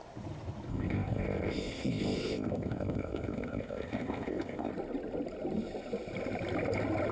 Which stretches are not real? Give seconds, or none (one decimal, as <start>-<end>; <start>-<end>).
0.7-4.7